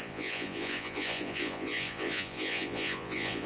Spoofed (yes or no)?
yes